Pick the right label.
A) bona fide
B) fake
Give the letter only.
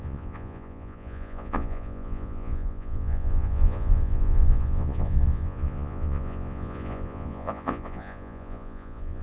B